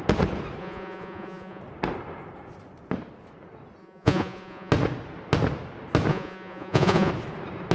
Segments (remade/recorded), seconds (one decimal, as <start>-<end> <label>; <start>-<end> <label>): 0.0-0.6 recorded; 0.6-1.6 remade; 1.6-3.8 recorded; 3.8-4.7 remade; 4.7-6.1 recorded; 6.1-7.1 remade; 7.1-7.7 recorded